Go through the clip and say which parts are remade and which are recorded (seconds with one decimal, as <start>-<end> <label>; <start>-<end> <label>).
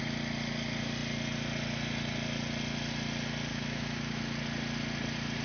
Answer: 0.0-3.5 recorded; 3.5-4.2 remade; 4.2-5.4 recorded